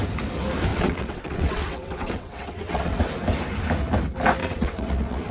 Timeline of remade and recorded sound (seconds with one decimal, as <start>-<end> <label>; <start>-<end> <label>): 0.0-0.7 recorded; 0.7-3.0 remade; 3.0-4.4 recorded; 4.4-5.3 remade